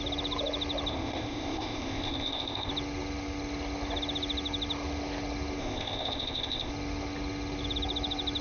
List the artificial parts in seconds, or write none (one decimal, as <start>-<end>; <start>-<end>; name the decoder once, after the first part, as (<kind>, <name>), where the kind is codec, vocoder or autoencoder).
0.9-2.7 (codec, ZipCodec); 5.6-6.7